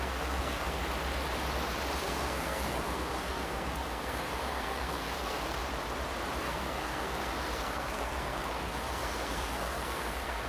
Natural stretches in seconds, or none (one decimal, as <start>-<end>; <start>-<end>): 0.8-2.0; 5.6-6.4